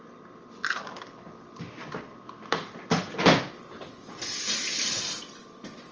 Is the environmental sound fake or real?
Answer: fake